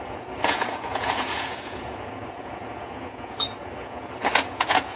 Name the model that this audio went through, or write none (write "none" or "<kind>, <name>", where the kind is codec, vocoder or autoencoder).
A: vocoder, Vocos